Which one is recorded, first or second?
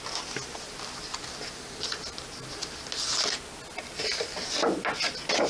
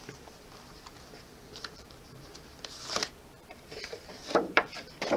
first